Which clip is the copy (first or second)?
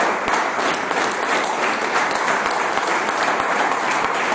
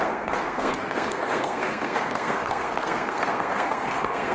second